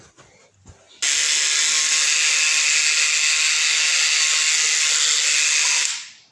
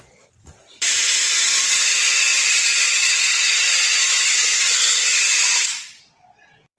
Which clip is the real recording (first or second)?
first